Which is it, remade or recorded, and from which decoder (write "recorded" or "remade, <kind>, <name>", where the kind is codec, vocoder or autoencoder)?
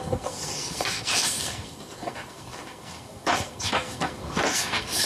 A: remade, codec, SNAC